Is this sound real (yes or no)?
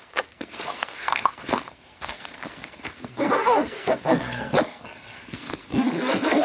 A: no